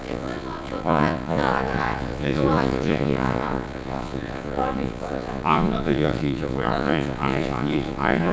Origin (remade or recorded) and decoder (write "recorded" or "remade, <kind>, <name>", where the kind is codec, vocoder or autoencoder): remade, vocoder, Vocos